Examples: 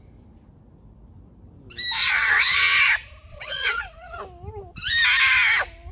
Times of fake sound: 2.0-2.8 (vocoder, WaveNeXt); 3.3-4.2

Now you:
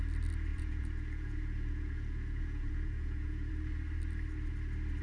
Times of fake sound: 0.5-3.5 (vocoder, Vocos)

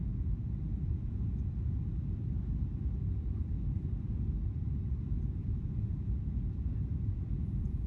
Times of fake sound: 0.0-1.8 (vocoder, Vocos); 5.4-7.9

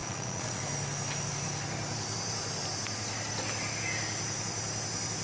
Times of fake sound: 0.0-0.6 (vocoder, Vocos)

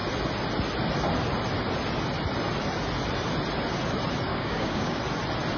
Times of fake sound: 4.3-5.0 (codec, DAC)